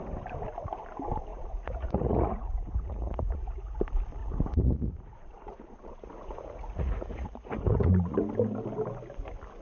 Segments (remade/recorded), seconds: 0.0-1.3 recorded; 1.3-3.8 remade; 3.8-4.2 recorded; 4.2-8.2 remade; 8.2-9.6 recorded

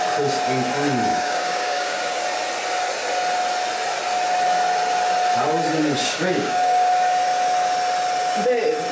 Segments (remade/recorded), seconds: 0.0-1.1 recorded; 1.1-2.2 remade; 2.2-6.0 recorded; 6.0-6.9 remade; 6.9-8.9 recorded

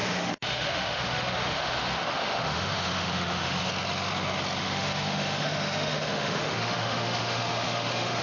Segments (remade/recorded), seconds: 0.0-3.7 remade; 3.7-4.6 recorded; 4.6-8.2 remade

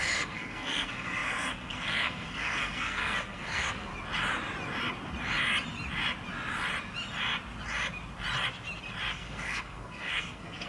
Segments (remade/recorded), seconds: 0.0-3.9 remade; 3.9-9.1 recorded; 9.1-10.7 remade